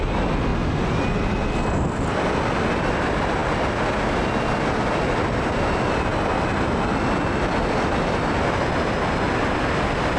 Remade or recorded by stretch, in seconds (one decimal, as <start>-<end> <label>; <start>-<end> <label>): 0.0-10.2 recorded